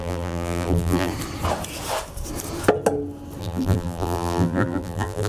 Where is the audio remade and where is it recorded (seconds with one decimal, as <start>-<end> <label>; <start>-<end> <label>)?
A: 0.0-1.1 remade; 1.1-3.4 recorded; 3.4-5.3 remade